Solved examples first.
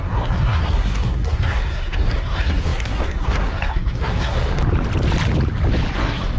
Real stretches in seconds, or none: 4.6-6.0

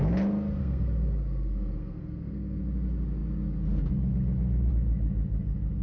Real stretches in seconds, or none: 0.0-0.6; 2.6-5.8

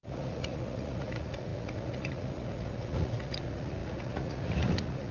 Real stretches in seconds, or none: none

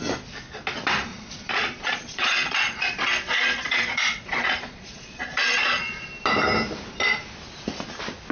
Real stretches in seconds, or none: 0.0-1.1; 6.1-8.3

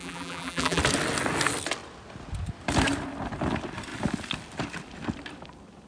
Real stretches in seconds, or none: 0.8-5.9

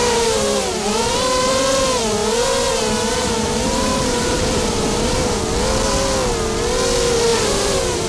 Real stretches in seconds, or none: 1.5-2.2; 5.4-7.3

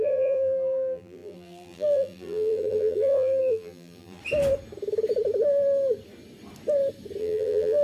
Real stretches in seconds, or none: 4.2-7.2